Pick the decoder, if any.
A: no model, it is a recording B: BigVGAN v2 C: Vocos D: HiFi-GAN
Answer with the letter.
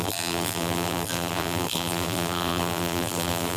B